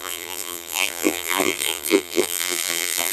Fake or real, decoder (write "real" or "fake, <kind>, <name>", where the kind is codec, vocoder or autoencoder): fake, vocoder, BigVGAN v2